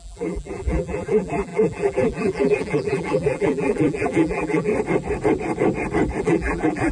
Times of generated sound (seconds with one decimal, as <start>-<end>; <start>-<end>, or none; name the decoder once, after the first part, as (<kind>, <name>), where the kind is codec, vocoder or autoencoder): 0.0-4.7 (vocoder, BigVGAN v2); 6.2-6.9